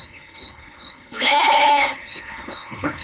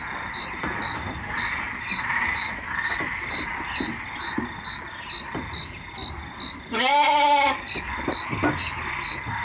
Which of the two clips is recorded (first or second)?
second